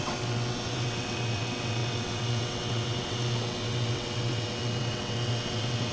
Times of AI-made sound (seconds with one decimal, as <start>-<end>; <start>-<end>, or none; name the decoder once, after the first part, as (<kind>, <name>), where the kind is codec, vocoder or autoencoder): 0.0-5.9 (vocoder, WaveNeXt)